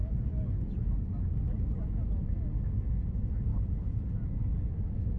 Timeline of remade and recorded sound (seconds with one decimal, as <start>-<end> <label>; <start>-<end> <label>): 0.0-3.5 recorded; 3.5-4.1 remade; 4.1-5.2 recorded